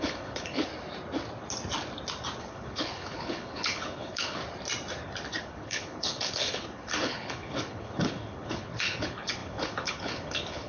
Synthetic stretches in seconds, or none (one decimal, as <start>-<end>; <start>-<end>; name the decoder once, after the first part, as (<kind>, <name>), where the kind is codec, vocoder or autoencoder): 0.0-0.7 (codec, HILCodec); 2.4-4.4; 5.4-10.7